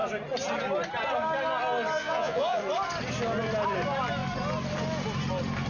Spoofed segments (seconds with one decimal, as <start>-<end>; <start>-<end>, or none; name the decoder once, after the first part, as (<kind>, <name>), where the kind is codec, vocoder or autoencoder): 2.0-2.6 (vocoder, Vocos)